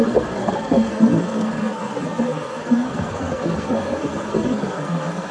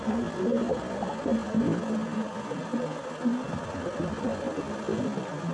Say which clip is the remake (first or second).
first